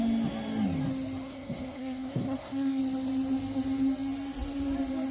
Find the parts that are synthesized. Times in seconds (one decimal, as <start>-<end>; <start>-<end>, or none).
1.3-2.8